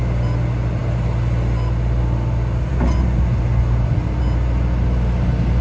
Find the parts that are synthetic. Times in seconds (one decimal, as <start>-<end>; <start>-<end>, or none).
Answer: none